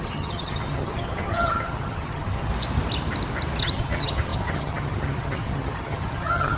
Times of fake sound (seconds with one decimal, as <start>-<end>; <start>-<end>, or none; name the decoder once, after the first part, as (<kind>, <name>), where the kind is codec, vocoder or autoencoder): 0.0-2.5 (vocoder, HiFi-GAN); 3.6-6.6